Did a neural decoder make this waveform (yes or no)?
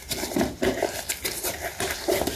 no